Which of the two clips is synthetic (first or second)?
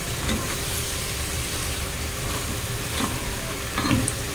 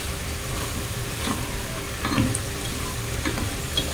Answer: first